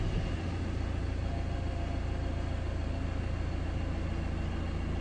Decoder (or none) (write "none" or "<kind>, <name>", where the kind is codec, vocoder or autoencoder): none